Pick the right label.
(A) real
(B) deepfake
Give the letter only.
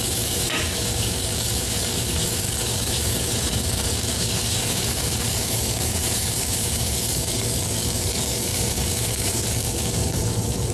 B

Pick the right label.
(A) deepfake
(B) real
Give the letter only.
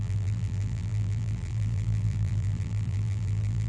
A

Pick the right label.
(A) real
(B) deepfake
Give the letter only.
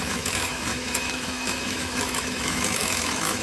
B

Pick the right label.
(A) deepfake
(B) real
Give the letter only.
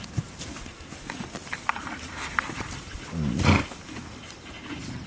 B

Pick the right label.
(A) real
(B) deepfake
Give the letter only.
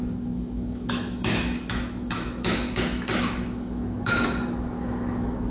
B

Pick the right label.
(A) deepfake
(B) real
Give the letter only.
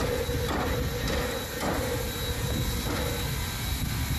B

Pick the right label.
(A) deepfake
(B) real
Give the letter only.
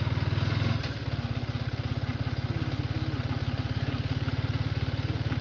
B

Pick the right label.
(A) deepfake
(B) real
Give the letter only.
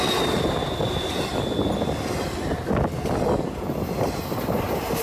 B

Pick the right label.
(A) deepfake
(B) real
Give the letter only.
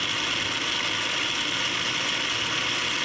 B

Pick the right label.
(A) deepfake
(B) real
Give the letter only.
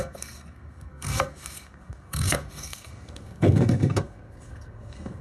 A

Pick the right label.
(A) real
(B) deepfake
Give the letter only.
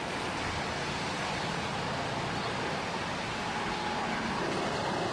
A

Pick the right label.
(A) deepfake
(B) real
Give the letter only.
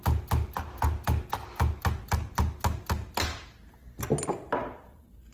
B